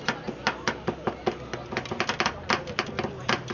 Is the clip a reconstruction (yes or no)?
no